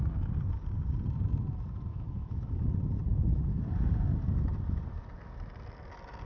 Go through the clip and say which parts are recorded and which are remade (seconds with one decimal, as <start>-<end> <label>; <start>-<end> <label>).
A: 0.0-1.9 recorded; 1.9-2.7 remade; 2.7-3.1 recorded; 3.1-3.6 remade; 3.6-6.2 recorded